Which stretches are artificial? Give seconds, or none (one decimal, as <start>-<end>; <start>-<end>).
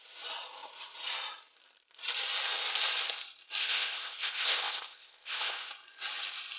3.6-5.7